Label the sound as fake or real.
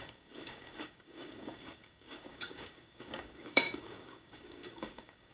fake